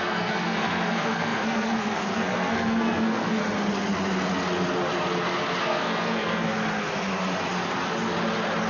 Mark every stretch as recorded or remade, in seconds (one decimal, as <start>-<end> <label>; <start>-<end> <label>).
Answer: 0.0-3.4 remade; 3.4-5.6 recorded; 5.6-6.5 remade; 6.5-8.7 recorded

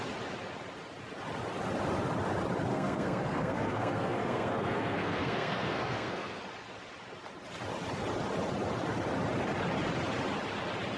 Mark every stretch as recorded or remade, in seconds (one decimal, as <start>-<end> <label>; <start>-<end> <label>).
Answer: 0.0-2.7 recorded; 2.7-6.4 remade; 6.4-11.0 recorded

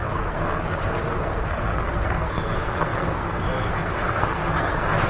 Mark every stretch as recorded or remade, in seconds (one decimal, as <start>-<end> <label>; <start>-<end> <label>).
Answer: 0.0-5.1 remade